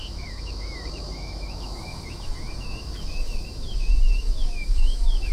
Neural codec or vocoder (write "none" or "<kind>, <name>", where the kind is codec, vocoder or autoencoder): autoencoder, DAC-VAE